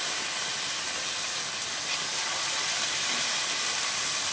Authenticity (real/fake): real